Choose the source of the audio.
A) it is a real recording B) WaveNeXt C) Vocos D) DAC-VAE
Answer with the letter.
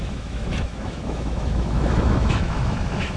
D